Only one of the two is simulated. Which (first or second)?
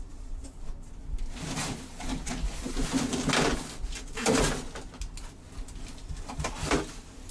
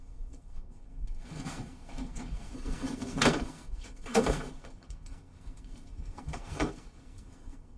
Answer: second